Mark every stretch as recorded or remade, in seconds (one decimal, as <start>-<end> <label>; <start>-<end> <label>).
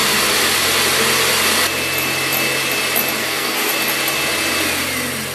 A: 0.0-3.2 recorded; 3.2-3.7 remade; 3.7-5.3 recorded